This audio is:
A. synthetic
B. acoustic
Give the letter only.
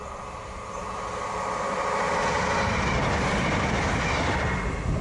B